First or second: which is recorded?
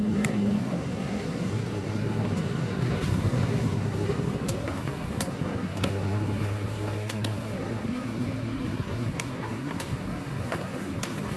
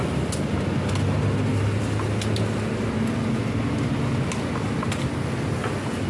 second